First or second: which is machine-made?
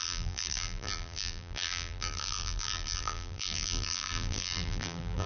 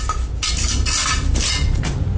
first